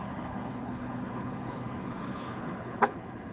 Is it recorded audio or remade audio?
remade